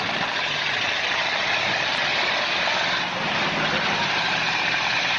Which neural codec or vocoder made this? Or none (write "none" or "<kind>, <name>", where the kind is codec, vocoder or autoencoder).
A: vocoder, BigVGAN v2